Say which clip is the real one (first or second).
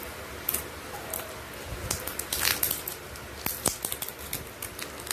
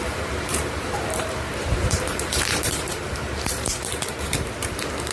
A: first